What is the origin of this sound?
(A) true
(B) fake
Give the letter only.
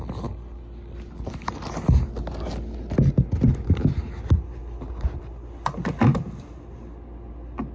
A